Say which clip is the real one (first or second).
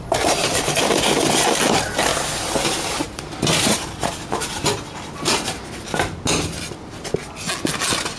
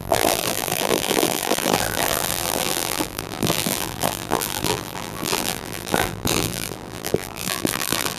first